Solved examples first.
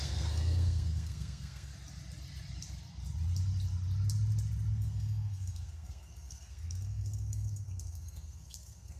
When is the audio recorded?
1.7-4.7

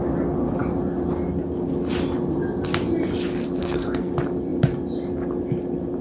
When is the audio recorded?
0.0-3.6; 4.1-6.0

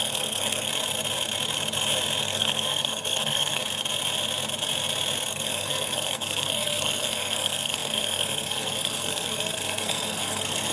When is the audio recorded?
0.7-2.2; 3.6-5.3